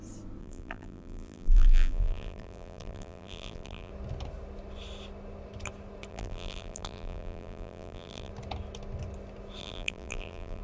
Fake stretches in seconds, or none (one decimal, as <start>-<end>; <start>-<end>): 0.4-3.9; 6.1-8.3; 9.6-10.6